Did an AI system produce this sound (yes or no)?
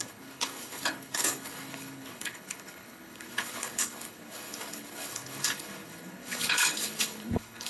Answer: yes